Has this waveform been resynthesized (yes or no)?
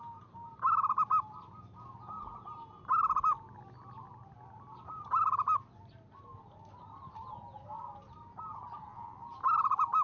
no